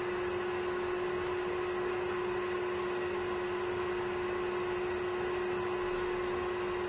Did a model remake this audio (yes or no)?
no